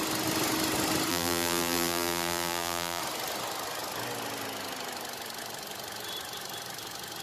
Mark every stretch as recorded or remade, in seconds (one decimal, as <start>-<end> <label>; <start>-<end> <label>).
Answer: 0.0-1.1 recorded; 1.1-3.0 remade; 3.0-7.2 recorded